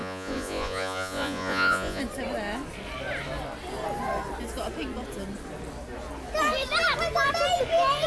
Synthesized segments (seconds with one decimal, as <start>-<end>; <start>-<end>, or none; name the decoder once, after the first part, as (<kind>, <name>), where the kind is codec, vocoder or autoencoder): 0.0-2.0 (vocoder, Vocos)